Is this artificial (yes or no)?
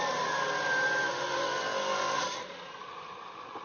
no